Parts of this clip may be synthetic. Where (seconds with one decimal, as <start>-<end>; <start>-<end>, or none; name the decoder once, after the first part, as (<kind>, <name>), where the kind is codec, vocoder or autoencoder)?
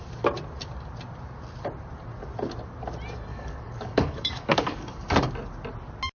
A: 3.3-5.3 (codec, DAC)